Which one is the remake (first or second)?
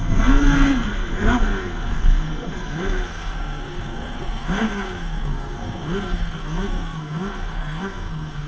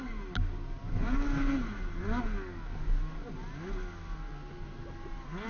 first